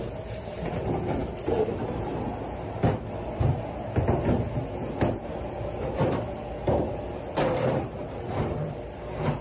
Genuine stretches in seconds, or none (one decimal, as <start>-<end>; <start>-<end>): 0.0-9.4